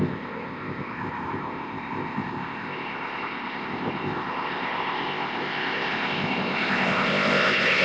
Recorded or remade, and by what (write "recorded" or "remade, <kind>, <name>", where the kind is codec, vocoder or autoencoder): remade, codec, ZipCodec